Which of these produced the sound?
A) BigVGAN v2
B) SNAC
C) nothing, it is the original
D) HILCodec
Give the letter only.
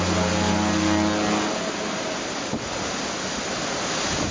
C